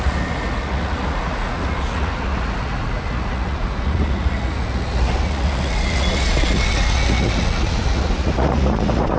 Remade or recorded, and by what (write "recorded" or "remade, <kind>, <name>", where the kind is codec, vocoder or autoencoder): remade, vocoder, Vocos